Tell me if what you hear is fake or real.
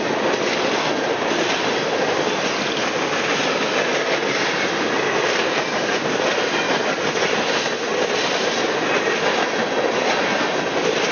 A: real